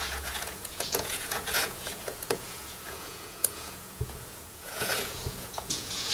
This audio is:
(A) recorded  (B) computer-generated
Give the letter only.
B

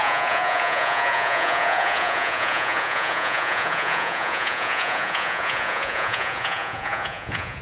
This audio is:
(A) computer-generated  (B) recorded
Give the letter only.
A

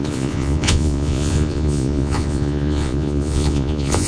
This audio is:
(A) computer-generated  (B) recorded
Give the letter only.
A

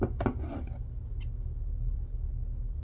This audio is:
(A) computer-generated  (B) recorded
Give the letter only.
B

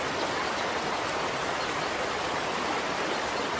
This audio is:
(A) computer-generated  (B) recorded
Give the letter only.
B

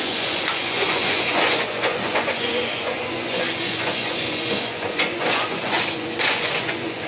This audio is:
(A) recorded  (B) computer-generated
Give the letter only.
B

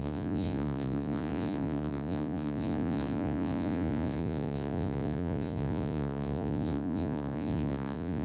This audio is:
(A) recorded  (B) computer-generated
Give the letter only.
B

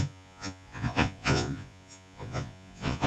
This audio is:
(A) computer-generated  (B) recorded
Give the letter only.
A